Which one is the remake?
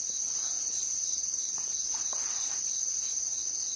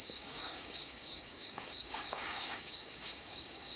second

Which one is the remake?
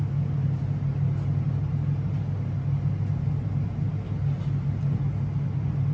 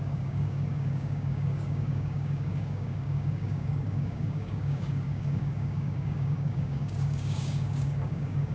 second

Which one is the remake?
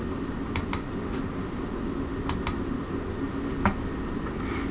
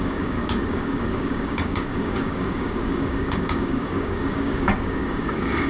second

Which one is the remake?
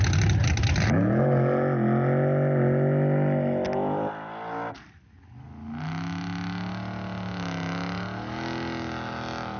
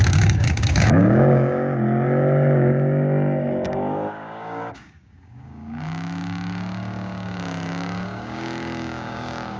second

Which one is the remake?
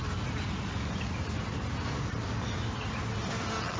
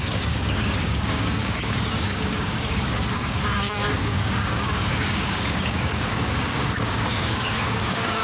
second